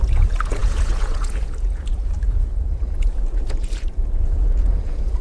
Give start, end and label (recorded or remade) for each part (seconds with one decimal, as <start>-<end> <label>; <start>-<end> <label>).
0.0-5.2 remade